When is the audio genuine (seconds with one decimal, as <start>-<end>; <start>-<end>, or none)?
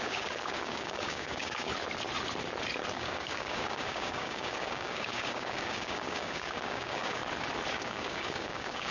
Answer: 1.7-2.9; 7.2-7.7